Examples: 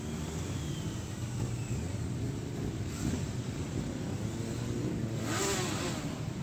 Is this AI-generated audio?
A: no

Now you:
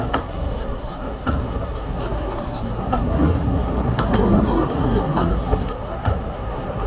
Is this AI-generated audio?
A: yes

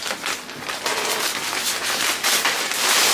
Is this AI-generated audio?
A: no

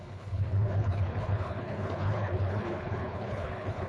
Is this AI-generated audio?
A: yes